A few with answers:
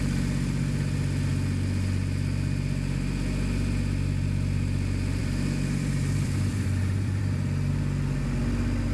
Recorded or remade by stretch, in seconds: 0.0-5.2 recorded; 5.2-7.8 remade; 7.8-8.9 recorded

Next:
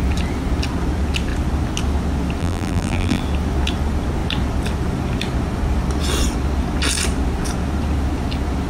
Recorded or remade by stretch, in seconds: 0.0-2.4 recorded; 2.4-3.2 remade; 3.2-8.7 recorded

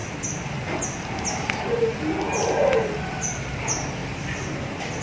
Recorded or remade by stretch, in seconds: 0.0-4.0 recorded; 4.0-5.0 remade

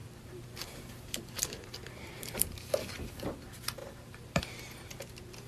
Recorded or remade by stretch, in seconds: 0.0-5.5 remade

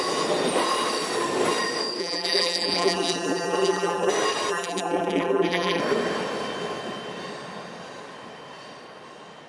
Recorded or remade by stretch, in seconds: 0.0-2.0 recorded; 2.0-4.1 remade; 4.1-4.5 recorded; 4.5-5.8 remade; 5.8-9.5 recorded

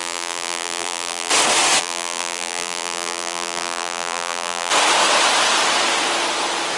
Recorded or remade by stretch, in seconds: 0.0-1.3 remade; 1.3-1.8 recorded; 1.8-4.7 remade; 4.7-6.8 recorded